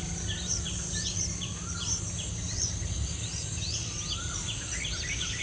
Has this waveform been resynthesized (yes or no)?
yes